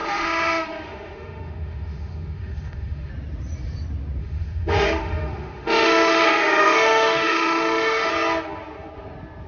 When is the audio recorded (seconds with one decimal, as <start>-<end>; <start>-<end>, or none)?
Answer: 3.1-4.2; 8.1-9.5